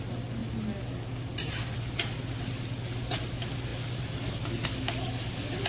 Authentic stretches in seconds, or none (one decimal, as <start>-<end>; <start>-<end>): 0.0-5.7